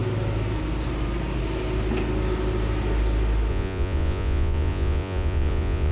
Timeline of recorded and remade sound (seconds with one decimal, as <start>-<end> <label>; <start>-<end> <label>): 0.0-3.5 recorded; 3.5-5.9 remade